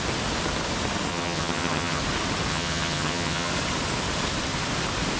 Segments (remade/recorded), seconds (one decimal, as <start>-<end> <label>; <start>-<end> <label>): 0.0-1.1 recorded; 1.1-2.0 remade; 2.0-2.5 recorded; 2.5-3.5 remade; 3.5-5.2 recorded